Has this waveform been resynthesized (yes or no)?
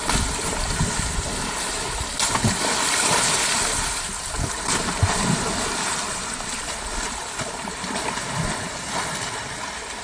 no